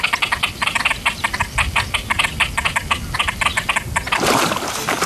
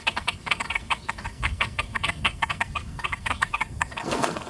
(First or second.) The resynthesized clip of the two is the second